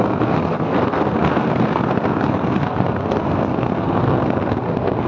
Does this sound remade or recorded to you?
remade